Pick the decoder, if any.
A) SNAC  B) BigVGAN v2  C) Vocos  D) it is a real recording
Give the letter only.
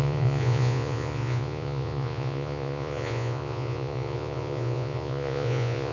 C